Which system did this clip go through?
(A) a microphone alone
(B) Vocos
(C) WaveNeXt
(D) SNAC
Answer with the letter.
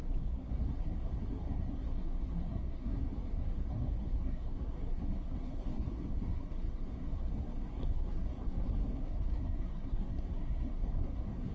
D